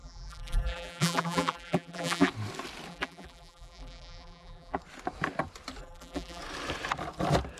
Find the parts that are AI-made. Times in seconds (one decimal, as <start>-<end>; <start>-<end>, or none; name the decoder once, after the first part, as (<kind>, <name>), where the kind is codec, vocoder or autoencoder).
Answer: 0.0-2.3 (vocoder, BigVGAN v2); 2.9-4.8; 5.8-6.4